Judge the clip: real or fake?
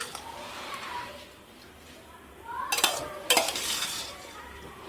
fake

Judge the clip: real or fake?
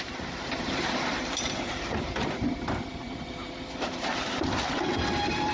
fake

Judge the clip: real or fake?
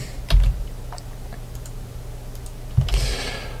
real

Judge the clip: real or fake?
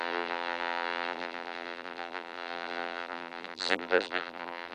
fake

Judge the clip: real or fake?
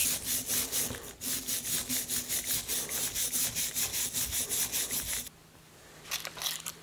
real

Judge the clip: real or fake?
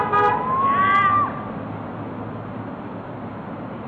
real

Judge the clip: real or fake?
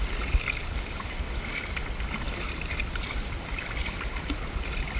fake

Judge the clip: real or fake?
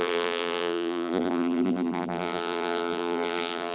fake